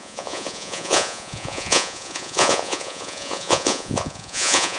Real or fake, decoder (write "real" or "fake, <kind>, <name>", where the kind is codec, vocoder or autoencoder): fake, vocoder, Vocos